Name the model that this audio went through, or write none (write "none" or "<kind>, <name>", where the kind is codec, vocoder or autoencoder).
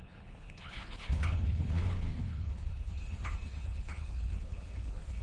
codec, HILCodec